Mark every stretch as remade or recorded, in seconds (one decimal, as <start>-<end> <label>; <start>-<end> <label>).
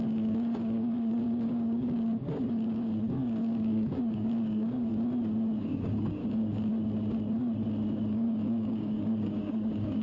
0.0-4.9 remade; 4.9-5.6 recorded; 5.6-6.7 remade; 6.7-8.1 recorded; 8.1-10.0 remade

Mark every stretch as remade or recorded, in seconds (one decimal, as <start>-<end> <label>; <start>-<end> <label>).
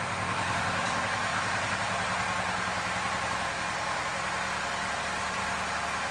0.0-1.3 remade; 1.3-5.0 recorded; 5.0-5.4 remade; 5.4-6.1 recorded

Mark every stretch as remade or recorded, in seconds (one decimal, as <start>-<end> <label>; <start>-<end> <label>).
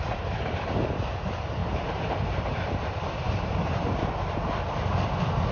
0.0-1.6 recorded; 1.6-4.1 remade; 4.1-5.5 recorded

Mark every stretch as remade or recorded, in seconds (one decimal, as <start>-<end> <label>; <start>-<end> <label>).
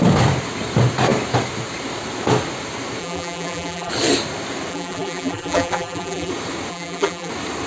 0.0-3.0 recorded; 3.0-3.9 remade; 3.9-4.7 recorded; 4.7-6.3 remade; 6.3-6.7 recorded; 6.7-7.3 remade; 7.3-7.7 recorded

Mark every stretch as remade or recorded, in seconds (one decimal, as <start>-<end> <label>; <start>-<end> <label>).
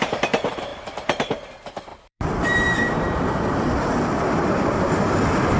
0.0-0.7 recorded; 0.7-1.5 remade; 1.5-1.9 recorded; 1.9-5.6 remade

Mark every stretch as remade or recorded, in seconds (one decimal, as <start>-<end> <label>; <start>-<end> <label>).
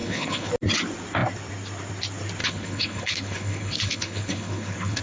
0.0-0.5 remade; 0.5-2.4 recorded; 2.4-5.0 remade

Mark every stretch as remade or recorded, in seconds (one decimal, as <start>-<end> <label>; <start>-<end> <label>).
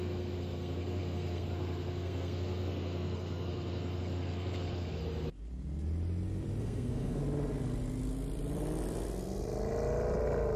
0.0-5.0 remade; 5.0-6.6 recorded; 6.6-7.2 remade; 7.2-10.6 recorded